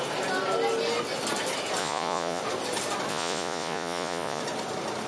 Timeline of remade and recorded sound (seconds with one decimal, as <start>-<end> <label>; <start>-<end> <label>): 0.0-1.8 recorded; 1.8-2.4 remade; 2.4-3.1 recorded; 3.1-4.4 remade; 4.4-5.1 recorded

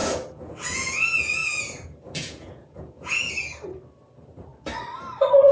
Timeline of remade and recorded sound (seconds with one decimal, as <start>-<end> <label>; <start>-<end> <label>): 0.0-3.3 remade; 3.3-5.5 recorded

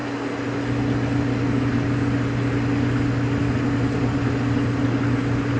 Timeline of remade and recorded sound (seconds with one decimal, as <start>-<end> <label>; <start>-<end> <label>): 0.0-5.6 recorded

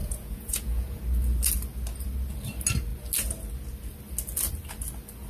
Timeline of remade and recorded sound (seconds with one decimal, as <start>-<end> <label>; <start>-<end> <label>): 0.0-1.0 remade; 1.0-5.3 recorded

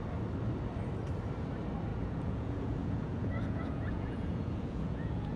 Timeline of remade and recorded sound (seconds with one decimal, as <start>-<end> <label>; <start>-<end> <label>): 0.0-1.9 recorded; 1.9-5.4 remade